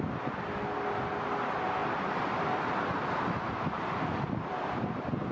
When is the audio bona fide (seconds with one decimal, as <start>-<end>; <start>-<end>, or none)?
0.0-5.3